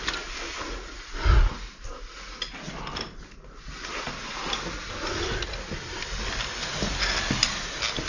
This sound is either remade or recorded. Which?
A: recorded